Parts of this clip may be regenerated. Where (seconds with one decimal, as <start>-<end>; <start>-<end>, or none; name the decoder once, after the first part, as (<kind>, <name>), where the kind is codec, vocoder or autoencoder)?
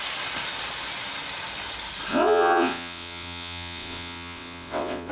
2.1-5.1 (vocoder, WaveNeXt)